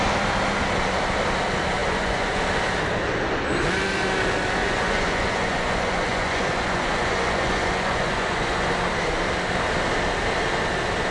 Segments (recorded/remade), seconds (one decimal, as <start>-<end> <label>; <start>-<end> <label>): 0.0-1.8 recorded; 1.8-2.4 remade; 2.4-4.6 recorded; 4.6-8.7 remade; 8.7-11.1 recorded